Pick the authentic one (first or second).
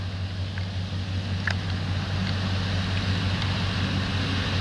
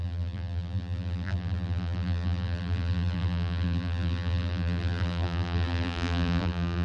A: first